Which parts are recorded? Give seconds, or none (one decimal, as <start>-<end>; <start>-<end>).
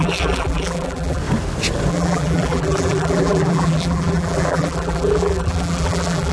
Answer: 1.2-1.9